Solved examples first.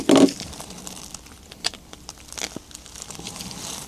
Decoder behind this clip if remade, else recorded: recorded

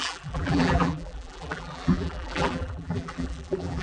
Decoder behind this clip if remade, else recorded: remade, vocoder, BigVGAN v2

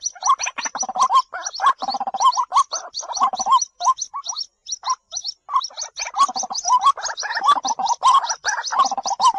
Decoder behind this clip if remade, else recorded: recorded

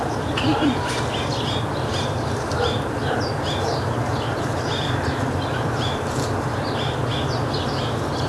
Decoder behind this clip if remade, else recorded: remade, vocoder, BigVGAN v2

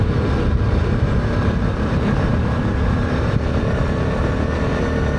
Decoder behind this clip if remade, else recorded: remade, vocoder, BigVGAN v2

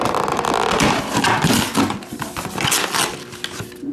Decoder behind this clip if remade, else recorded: recorded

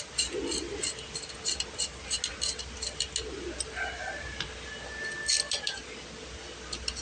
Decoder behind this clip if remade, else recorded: recorded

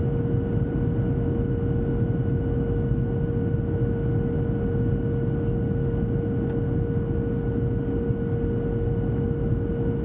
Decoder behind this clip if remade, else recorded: recorded